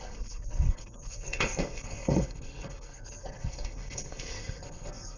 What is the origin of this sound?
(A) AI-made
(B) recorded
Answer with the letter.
A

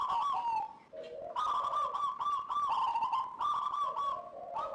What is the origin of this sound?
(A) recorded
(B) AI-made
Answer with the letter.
A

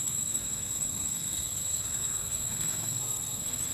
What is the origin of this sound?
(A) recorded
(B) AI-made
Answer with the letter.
B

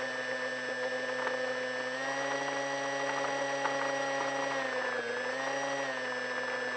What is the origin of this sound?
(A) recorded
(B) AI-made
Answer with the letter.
A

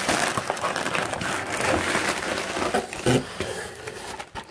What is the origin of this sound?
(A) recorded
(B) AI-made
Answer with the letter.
A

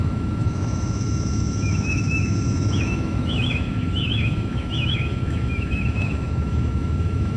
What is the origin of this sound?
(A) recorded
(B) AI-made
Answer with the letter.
B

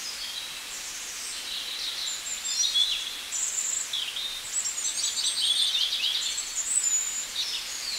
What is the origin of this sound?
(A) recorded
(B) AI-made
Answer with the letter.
A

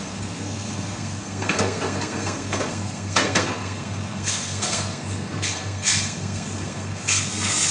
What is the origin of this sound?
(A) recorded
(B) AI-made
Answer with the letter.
B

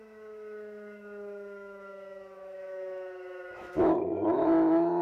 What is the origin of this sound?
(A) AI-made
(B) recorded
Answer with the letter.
A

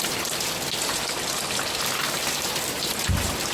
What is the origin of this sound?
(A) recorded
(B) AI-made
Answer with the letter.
A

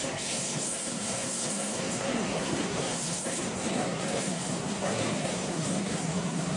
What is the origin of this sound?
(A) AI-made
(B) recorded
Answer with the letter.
A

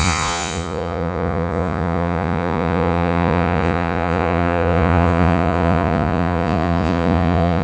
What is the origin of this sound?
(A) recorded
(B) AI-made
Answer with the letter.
B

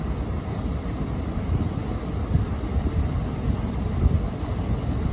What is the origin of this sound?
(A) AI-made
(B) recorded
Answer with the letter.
B